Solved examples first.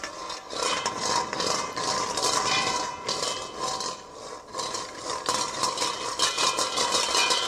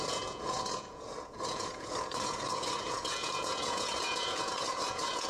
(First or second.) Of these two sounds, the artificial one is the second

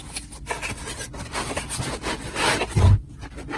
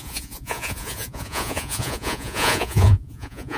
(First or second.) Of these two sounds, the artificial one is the second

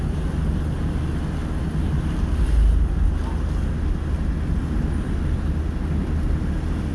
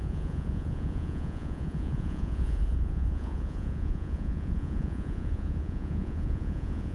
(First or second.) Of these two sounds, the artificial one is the second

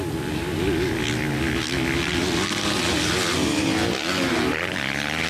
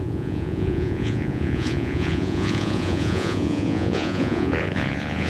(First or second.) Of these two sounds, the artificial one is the second